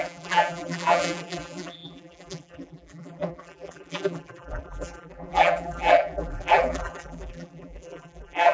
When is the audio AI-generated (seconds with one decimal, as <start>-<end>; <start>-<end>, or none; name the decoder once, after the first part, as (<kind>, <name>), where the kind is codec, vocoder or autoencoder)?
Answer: 0.0-8.5 (vocoder, BigVGAN v2)